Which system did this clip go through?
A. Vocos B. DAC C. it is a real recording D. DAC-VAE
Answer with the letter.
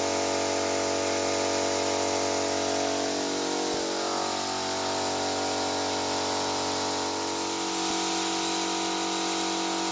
C